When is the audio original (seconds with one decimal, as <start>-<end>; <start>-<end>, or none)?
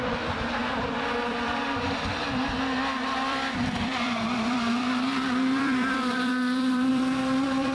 none